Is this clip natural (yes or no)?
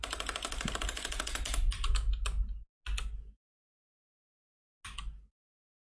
yes